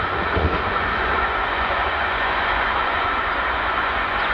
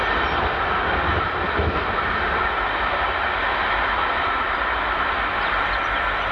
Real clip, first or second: second